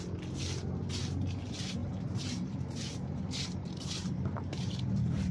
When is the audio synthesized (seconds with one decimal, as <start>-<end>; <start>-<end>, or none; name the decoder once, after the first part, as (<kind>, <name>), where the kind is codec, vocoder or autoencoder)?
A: 1.8-5.3 (vocoder, BigVGAN v2)